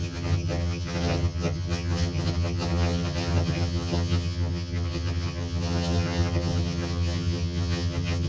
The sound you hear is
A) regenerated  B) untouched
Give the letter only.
A